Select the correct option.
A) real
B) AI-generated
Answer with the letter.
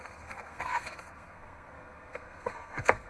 B